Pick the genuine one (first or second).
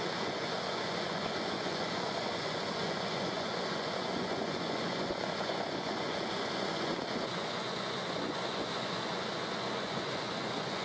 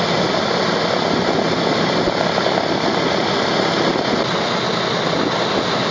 second